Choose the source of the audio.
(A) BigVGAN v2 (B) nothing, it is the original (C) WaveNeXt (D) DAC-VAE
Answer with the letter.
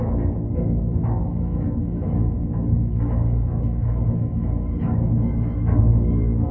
D